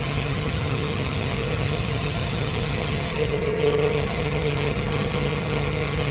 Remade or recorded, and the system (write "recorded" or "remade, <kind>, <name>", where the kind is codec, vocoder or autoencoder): remade, vocoder, HiFi-GAN